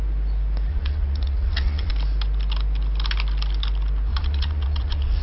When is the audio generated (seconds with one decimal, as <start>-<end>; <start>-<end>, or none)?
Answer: 0.7-1.9; 4.1-5.2